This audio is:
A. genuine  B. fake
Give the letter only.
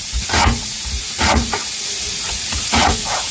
B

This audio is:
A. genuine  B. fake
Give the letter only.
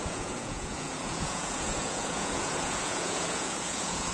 B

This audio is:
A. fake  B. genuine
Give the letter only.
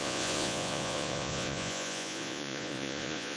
A